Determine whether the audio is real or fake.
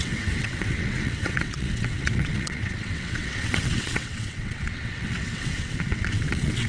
fake